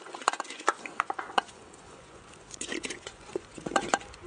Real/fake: fake